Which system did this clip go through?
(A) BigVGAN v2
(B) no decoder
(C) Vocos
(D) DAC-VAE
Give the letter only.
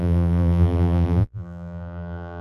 A